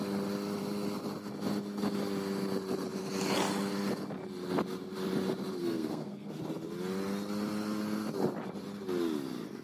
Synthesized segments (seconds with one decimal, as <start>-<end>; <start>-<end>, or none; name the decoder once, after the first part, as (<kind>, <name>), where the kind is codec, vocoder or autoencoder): 5.6-6.4 (codec, SNAC)